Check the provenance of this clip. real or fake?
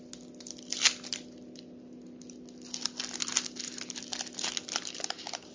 real